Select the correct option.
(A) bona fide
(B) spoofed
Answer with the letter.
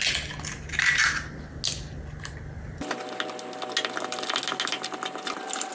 A